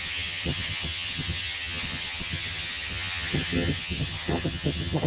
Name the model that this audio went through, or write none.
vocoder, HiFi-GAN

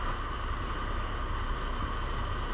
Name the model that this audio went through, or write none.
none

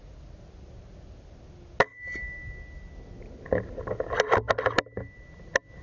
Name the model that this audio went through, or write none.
none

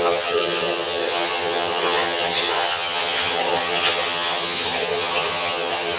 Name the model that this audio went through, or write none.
vocoder, HiFi-GAN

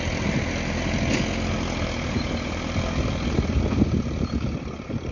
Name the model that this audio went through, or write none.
none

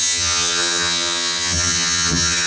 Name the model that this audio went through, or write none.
vocoder, HiFi-GAN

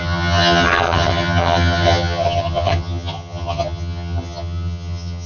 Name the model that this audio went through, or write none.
vocoder, HiFi-GAN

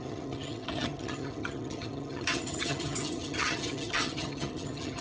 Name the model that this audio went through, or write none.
vocoder, HiFi-GAN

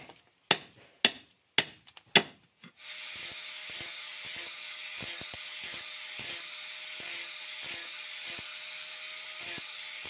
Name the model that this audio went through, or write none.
none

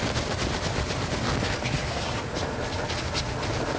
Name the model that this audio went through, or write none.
none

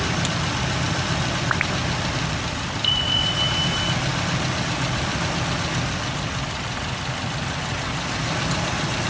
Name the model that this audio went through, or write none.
none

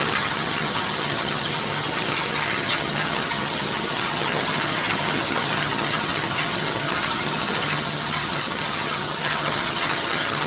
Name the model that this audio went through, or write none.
vocoder, HiFi-GAN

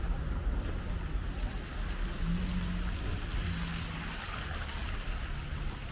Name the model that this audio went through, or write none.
none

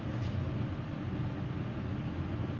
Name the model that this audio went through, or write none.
none